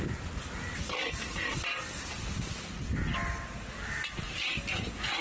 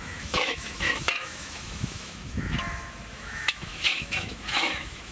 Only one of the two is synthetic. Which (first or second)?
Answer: second